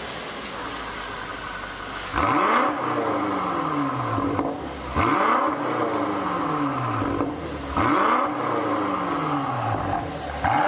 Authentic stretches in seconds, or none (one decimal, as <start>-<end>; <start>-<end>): 0.0-10.7